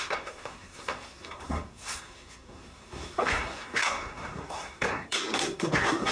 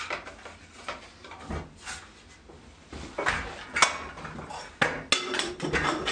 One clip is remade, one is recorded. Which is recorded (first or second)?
second